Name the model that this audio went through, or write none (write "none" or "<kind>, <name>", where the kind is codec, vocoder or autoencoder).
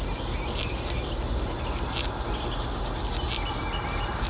none